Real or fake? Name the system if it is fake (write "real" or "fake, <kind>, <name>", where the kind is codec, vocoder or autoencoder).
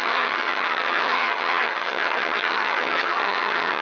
fake, vocoder, HiFi-GAN